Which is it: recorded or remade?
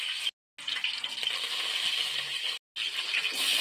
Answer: recorded